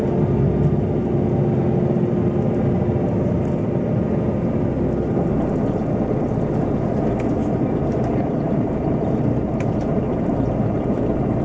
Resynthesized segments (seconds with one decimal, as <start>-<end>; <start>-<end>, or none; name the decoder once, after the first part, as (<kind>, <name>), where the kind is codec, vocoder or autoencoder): 7.4-11.0 (vocoder, BigVGAN v2)